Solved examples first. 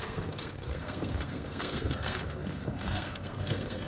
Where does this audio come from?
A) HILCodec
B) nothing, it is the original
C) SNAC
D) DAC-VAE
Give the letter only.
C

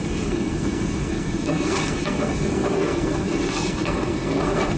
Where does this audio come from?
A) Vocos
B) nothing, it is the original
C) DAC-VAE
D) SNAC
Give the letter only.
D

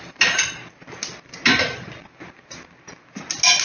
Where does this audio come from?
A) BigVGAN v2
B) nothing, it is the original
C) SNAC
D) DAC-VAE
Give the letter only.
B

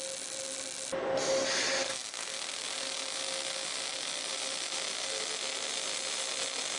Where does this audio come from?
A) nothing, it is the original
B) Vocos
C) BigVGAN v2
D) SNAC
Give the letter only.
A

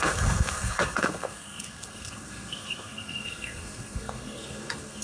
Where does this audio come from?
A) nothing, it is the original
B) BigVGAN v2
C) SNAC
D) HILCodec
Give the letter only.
C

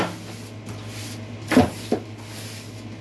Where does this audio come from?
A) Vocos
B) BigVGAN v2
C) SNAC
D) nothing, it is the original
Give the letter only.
D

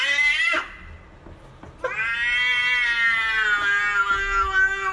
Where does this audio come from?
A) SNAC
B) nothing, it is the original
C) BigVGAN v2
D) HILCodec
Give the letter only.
B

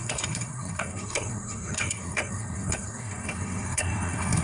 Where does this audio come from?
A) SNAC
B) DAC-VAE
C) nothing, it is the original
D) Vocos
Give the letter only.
A